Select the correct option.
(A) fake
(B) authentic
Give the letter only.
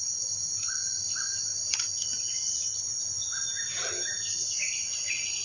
B